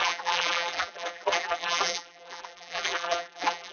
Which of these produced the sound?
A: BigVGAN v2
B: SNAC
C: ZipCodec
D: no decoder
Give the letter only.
A